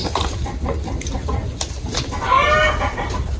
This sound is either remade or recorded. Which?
recorded